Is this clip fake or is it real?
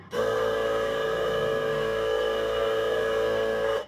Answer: fake